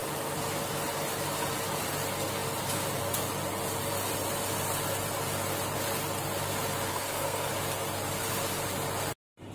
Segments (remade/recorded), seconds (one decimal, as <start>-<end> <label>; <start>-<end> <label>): 0.0-6.9 recorded; 6.9-7.5 remade; 7.5-9.5 recorded